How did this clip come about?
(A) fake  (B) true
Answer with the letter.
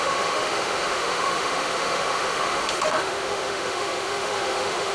A